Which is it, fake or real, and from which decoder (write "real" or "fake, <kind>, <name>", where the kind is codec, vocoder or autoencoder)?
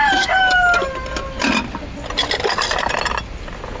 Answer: real